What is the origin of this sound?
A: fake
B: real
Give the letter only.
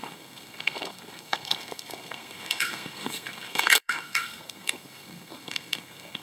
A